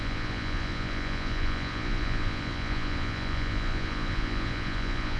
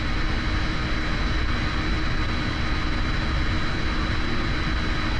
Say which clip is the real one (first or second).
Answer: second